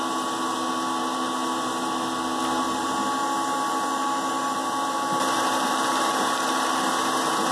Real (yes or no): yes